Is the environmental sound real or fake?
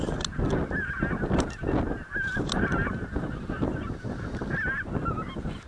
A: real